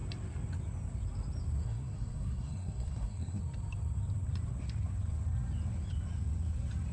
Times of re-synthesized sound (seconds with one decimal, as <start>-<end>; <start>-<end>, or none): 1.6-3.4